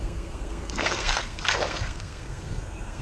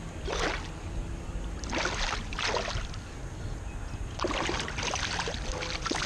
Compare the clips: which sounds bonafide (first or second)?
second